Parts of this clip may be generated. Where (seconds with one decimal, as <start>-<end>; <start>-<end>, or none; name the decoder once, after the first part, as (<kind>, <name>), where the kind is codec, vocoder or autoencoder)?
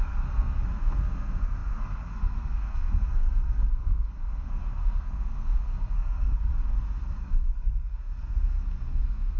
0.0-6.5 (codec, SNAC); 7.2-9.4